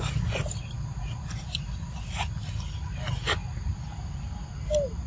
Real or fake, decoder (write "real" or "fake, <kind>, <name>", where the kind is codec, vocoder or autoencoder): real